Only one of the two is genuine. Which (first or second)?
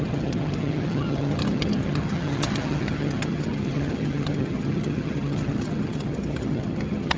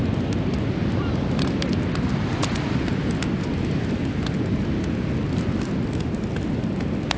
second